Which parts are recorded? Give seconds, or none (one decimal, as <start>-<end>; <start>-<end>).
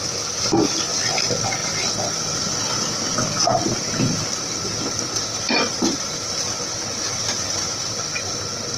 0.0-8.8